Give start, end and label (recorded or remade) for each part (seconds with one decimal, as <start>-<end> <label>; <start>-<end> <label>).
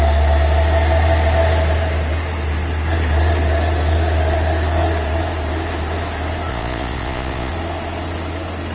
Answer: 0.0-6.5 recorded; 6.5-7.5 remade; 7.5-8.7 recorded